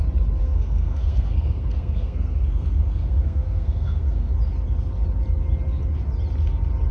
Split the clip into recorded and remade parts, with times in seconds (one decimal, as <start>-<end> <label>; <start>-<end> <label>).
0.0-0.4 recorded; 0.4-4.3 remade; 4.3-6.9 recorded